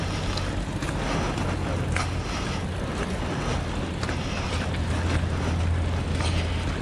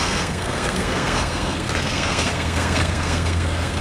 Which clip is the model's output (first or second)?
second